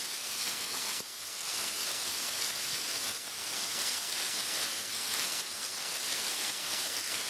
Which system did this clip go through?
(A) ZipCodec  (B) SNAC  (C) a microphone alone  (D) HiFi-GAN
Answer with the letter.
B